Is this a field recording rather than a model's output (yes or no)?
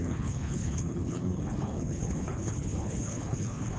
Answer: no